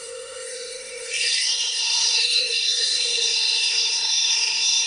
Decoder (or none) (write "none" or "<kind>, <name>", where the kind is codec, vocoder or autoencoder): codec, SNAC